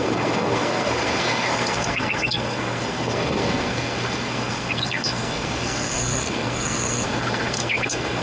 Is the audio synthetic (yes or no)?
yes